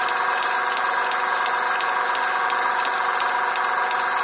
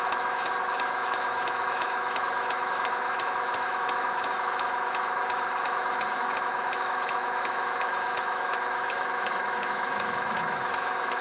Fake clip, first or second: second